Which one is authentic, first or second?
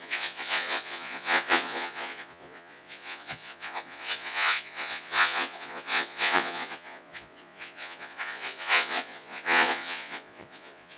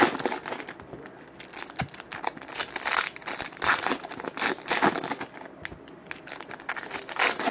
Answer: second